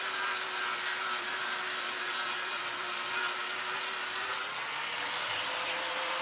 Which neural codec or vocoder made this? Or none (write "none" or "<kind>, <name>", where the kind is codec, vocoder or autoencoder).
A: vocoder, BigVGAN v2